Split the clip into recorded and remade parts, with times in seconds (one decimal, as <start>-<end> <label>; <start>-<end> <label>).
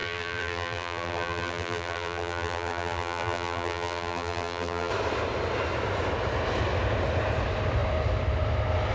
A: 0.0-4.9 remade; 4.9-8.9 recorded